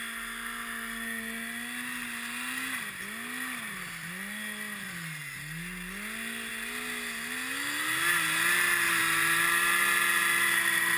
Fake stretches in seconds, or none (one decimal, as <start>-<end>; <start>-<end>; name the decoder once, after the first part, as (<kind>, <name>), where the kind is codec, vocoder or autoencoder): none